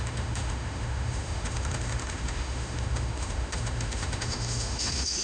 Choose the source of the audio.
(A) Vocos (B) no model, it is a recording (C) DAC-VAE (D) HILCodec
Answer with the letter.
C